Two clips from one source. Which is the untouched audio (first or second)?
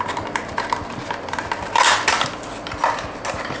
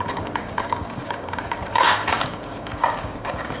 first